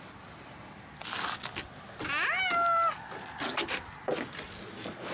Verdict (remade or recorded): recorded